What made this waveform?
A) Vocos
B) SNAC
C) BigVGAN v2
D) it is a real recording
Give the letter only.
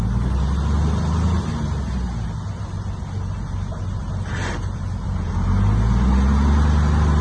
D